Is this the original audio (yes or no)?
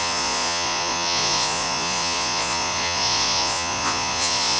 no